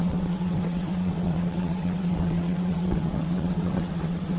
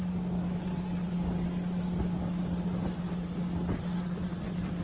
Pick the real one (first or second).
second